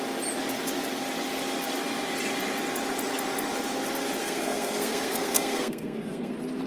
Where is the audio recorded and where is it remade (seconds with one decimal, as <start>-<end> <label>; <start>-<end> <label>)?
0.0-4.2 recorded; 4.2-6.3 remade; 6.3-6.7 recorded